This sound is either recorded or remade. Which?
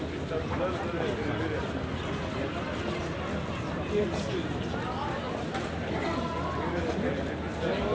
recorded